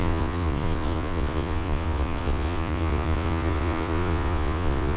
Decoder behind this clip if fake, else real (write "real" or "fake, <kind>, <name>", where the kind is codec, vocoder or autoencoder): fake, vocoder, Vocos